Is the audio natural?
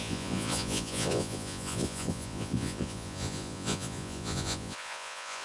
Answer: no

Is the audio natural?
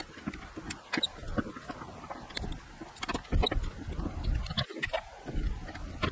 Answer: yes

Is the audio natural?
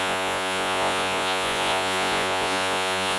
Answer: no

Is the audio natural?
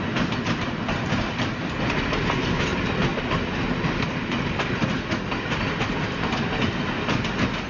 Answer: yes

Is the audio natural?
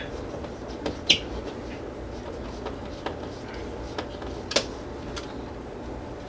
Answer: yes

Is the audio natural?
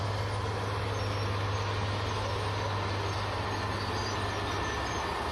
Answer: yes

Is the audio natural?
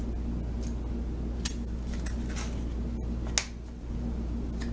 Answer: yes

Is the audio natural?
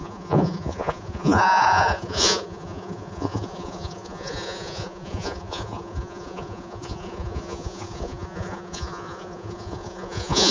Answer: no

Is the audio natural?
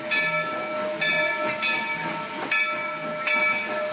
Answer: yes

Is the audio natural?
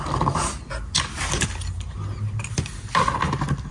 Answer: yes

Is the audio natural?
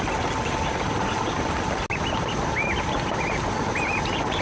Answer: yes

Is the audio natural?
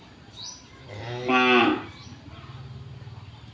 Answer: yes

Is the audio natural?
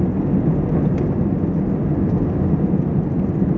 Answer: yes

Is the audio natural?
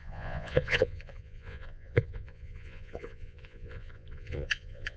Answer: no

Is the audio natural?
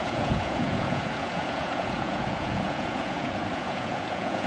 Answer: no